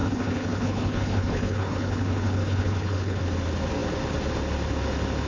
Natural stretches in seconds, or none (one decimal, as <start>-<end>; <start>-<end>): 3.2-5.3